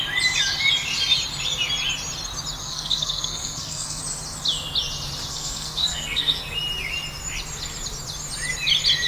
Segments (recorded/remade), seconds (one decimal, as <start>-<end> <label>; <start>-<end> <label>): 0.0-2.6 recorded; 2.6-4.0 remade; 4.0-5.3 recorded; 5.3-6.4 remade; 6.4-9.1 recorded